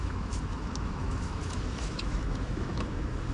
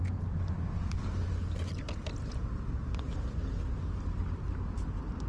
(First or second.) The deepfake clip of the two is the first